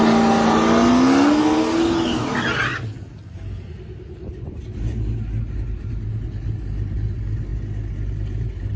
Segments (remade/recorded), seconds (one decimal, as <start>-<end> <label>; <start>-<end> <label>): 0.0-8.8 recorded